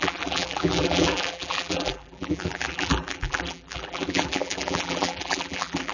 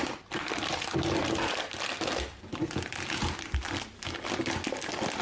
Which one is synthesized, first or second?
first